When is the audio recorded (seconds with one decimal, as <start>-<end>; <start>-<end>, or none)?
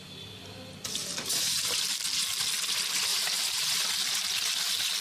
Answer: 0.0-1.0; 1.8-3.1; 3.8-5.0